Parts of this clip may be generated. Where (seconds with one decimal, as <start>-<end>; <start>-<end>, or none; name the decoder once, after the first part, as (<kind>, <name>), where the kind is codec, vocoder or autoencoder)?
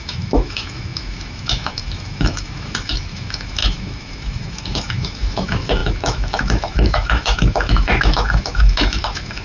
0.0-9.4 (autoencoder, DAC-VAE)